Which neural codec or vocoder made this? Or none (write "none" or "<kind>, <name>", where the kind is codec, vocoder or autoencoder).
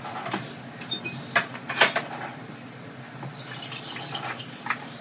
none